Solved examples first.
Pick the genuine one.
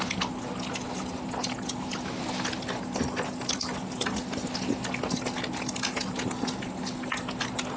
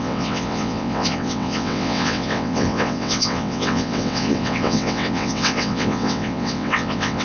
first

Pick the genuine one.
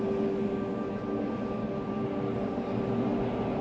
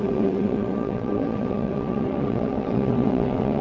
first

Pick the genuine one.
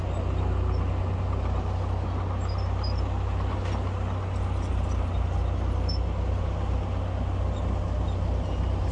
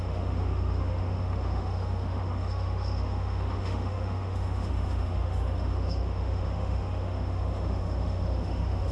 first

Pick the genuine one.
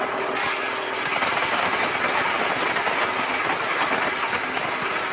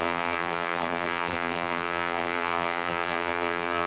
first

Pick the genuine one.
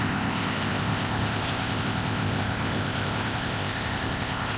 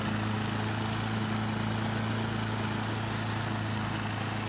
second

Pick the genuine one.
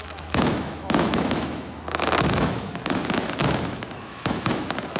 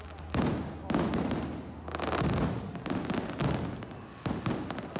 second